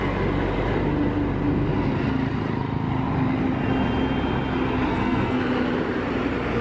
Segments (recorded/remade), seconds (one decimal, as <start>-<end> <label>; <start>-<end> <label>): 0.0-4.9 recorded; 4.9-5.4 remade; 5.4-6.6 recorded